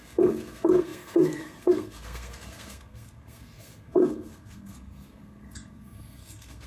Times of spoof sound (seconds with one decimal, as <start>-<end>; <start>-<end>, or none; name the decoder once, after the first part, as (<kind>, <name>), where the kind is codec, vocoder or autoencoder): 0.0-6.7 (codec, SNAC)